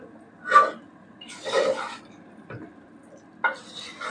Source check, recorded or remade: recorded